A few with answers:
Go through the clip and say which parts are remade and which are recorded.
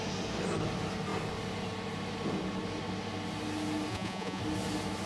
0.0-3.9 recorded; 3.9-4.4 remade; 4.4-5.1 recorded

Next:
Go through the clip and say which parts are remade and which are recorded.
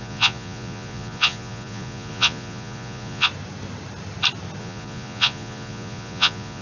0.0-3.3 remade; 3.3-4.6 recorded; 4.6-6.6 remade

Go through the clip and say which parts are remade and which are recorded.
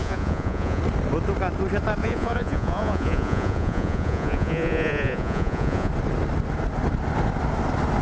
0.0-0.8 remade; 0.8-2.0 recorded; 2.0-5.9 remade; 5.9-8.0 recorded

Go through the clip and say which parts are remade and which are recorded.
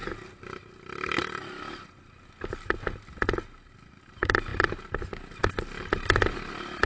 0.0-6.9 recorded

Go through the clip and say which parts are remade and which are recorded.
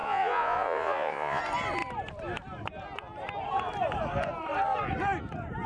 0.0-1.4 remade; 1.4-5.7 recorded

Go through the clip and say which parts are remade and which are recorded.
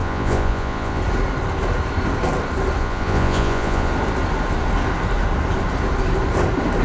0.0-1.0 remade; 1.0-2.8 recorded; 2.8-3.9 remade; 3.9-6.8 recorded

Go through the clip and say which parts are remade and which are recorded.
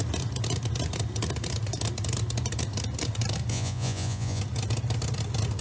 0.0-3.5 recorded; 3.5-4.4 remade; 4.4-5.6 recorded